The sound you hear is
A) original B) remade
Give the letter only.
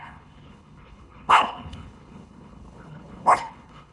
B